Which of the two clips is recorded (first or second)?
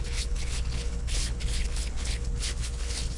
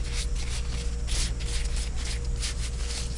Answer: second